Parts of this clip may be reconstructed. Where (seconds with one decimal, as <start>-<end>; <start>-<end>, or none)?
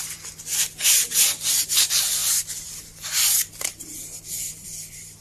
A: 0.0-2.2; 3.5-5.2